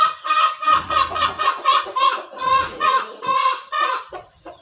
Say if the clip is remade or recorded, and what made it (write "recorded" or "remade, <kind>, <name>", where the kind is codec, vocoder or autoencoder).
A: remade, vocoder, Vocos